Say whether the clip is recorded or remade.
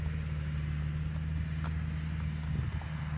recorded